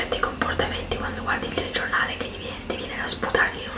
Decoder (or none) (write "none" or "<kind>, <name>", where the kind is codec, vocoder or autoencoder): none